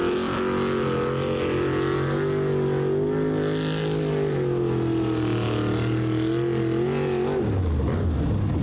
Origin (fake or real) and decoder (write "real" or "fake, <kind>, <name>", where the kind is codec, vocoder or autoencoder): real